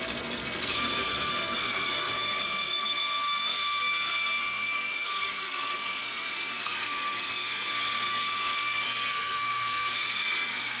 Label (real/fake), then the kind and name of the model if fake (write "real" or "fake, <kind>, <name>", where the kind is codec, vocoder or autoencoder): fake, codec, SNAC